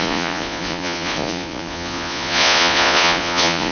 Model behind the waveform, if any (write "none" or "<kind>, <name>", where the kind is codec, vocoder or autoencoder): vocoder, Vocos